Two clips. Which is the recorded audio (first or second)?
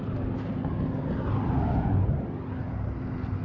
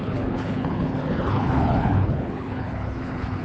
first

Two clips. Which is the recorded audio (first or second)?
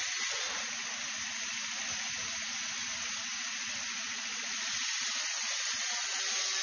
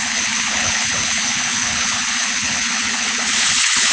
first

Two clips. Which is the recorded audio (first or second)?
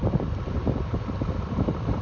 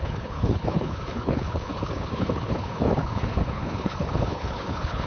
first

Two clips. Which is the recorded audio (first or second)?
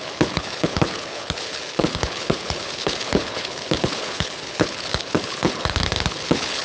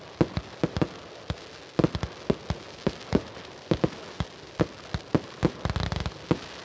second